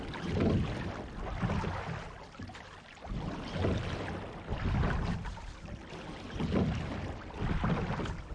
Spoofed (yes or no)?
no